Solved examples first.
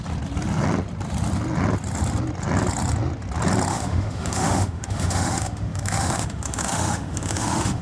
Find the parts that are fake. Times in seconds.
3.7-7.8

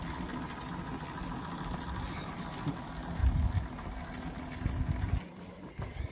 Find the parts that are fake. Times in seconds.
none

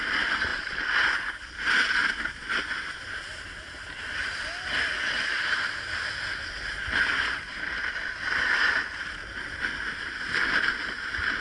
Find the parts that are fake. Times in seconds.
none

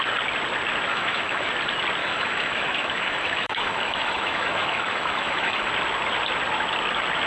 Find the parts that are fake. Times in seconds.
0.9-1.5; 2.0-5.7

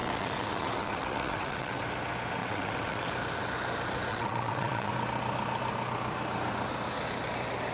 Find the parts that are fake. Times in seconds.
0.0-1.8; 2.4-3.1; 4.1-4.9

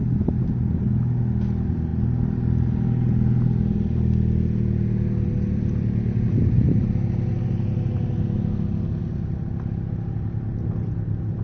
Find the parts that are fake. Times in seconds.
none